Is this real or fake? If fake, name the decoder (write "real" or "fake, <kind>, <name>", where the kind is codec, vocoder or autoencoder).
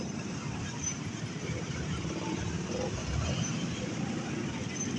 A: real